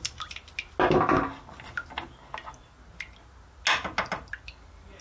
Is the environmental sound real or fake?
real